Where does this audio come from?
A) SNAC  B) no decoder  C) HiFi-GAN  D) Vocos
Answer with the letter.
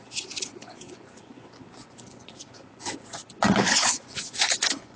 D